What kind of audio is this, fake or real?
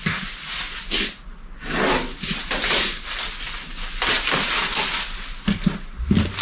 real